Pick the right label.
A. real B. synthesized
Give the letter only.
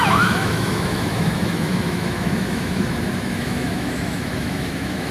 B